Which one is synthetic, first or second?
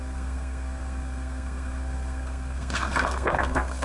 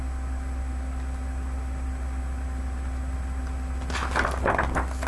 first